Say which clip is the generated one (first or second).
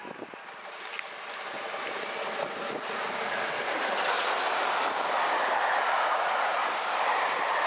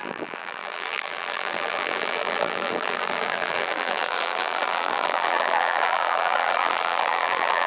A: second